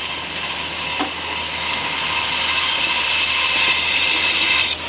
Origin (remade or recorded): recorded